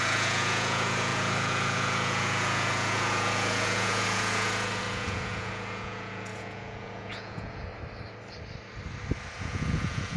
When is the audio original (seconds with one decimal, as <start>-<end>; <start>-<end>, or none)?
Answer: 7.7-9.4